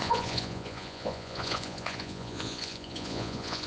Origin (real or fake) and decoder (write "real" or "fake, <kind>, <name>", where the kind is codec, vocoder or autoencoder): fake, vocoder, Vocos